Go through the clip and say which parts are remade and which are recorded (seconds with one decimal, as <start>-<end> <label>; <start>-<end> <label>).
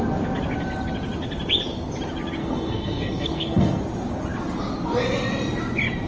0.0-2.4 recorded; 2.4-3.8 remade; 3.8-6.1 recorded